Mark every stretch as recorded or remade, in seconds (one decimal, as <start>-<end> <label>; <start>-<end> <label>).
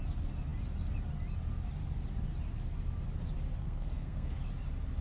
0.0-3.6 recorded; 3.6-4.4 remade; 4.4-5.0 recorded